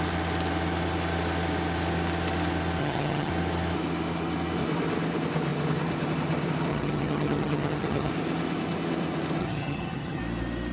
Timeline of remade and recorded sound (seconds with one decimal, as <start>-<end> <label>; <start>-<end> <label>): 0.0-2.8 recorded; 2.8-3.3 remade; 3.3-6.7 recorded; 6.7-8.1 remade; 8.1-9.4 recorded; 9.4-10.2 remade; 10.2-10.7 recorded